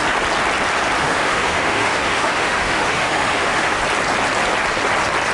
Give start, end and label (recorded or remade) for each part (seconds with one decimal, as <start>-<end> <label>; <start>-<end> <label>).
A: 0.0-1.0 recorded; 1.0-3.8 remade; 3.8-5.3 recorded